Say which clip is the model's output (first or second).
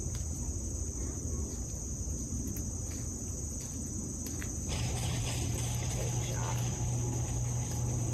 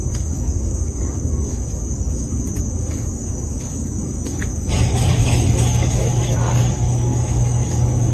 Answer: second